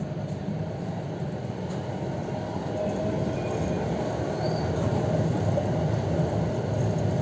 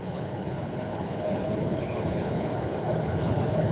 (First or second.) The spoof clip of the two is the second